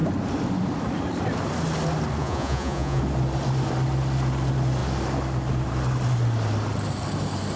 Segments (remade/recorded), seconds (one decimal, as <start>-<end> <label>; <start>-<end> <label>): 0.0-2.2 recorded; 2.2-3.0 remade; 3.0-7.6 recorded